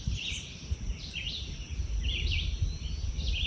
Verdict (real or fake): real